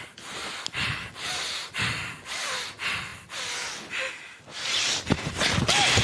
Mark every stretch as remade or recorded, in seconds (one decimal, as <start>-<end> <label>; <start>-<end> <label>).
0.0-6.0 recorded